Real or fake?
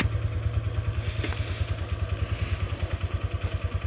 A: real